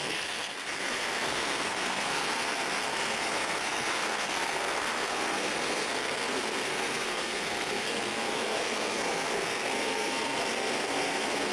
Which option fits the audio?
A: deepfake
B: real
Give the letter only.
A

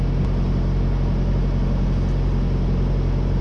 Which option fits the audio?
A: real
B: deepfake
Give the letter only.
A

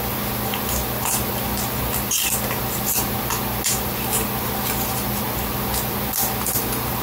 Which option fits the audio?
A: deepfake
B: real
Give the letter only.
B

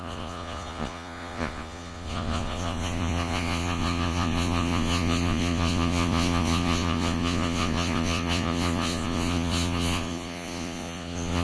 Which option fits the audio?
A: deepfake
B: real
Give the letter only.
A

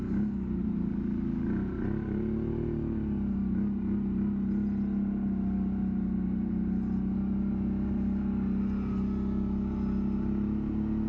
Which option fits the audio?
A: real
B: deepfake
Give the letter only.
A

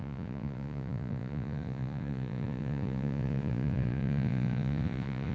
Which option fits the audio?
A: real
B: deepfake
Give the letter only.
B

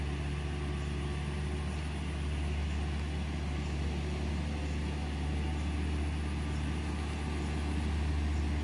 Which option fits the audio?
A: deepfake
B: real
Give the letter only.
B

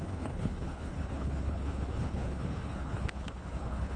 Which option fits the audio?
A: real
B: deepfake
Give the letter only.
B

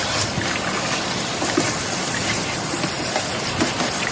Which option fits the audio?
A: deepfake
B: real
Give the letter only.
B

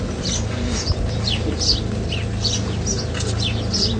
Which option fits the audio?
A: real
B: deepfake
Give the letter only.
A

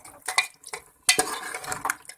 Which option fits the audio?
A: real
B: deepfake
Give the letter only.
B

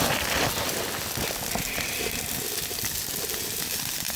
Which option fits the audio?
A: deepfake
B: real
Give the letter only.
B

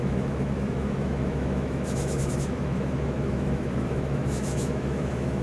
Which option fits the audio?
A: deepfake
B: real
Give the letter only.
A